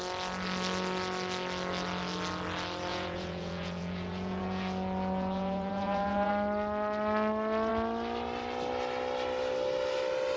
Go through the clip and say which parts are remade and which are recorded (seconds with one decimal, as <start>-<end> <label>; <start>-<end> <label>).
0.0-2.9 recorded; 2.9-6.3 remade; 6.3-10.4 recorded